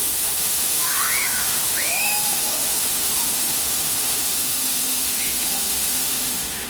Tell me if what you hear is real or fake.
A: fake